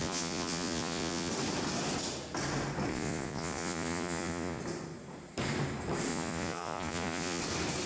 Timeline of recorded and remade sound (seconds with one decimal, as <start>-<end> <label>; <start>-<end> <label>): 0.0-1.3 remade; 1.3-2.9 recorded; 2.9-4.6 remade; 4.6-6.1 recorded; 6.1-7.4 remade; 7.4-7.9 recorded